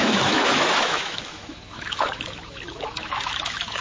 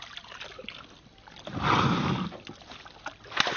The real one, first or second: second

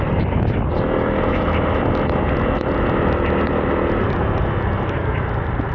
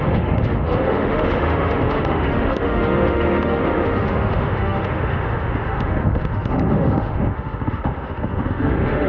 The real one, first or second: first